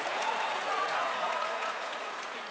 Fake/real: fake